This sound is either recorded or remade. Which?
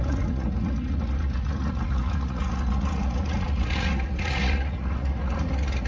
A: remade